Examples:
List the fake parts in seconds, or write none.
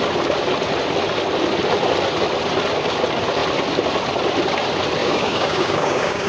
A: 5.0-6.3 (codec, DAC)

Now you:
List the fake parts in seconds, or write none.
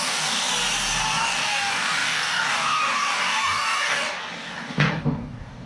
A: 0.0-0.5 (codec, DAC); 1.2-5.7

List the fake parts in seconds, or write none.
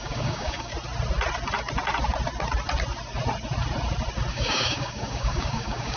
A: 0.0-0.7 (codec, DAC); 4.3-6.0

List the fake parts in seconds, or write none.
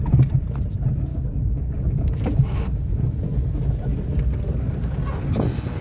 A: 1.1-2.9 (codec, DAC)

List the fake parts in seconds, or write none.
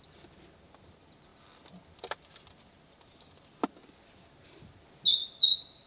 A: none